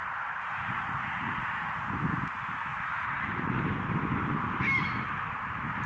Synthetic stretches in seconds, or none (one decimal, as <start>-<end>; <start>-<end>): 0.0-1.8; 2.7-3.6